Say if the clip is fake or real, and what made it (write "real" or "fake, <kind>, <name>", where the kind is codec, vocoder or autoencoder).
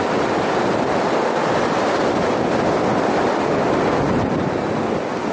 real